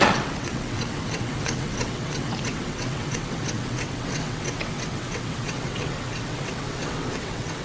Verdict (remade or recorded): remade